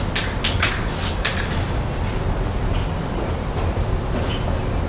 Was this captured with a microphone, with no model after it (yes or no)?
yes